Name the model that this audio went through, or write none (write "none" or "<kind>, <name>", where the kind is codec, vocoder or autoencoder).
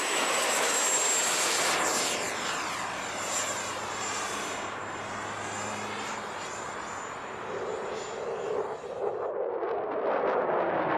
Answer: none